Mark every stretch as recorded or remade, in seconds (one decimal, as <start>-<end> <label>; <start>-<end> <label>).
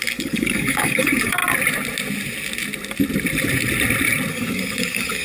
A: 0.0-1.4 remade; 1.4-4.3 recorded; 4.3-5.2 remade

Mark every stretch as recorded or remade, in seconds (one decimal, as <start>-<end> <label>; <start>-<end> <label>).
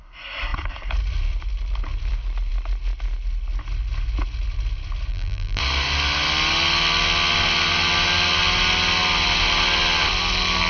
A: 0.0-5.1 recorded; 5.1-5.6 remade; 5.6-10.7 recorded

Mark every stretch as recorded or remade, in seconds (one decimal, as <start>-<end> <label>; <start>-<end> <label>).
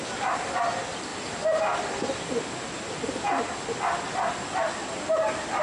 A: 0.0-5.6 recorded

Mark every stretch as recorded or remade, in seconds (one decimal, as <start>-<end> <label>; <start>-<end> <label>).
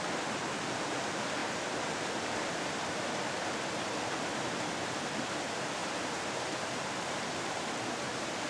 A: 0.0-8.5 recorded